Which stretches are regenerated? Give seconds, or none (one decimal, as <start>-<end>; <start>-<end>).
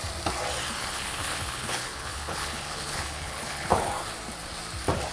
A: 0.8-3.9